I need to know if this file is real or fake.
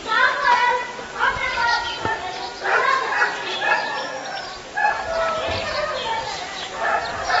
real